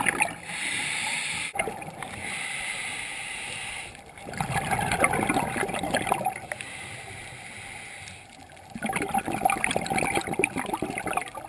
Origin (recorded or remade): recorded